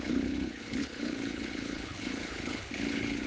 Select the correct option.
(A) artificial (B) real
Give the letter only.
A